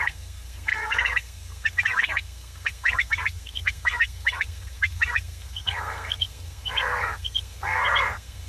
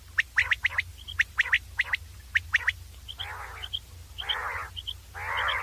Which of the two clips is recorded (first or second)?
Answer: second